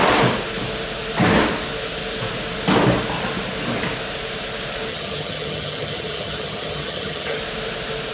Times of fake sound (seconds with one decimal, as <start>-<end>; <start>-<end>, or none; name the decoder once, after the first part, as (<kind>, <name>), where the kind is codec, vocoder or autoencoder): 4.9-7.4 (vocoder, HiFi-GAN)